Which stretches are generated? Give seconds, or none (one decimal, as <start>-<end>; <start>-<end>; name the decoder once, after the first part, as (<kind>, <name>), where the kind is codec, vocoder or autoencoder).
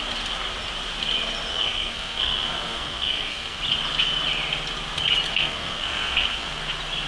1.5-3.6 (codec, SNAC); 5.3-6.6